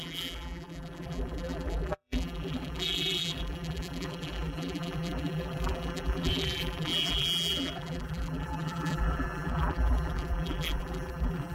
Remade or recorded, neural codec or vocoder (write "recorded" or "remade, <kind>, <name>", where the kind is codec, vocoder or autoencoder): remade, vocoder, BigVGAN v2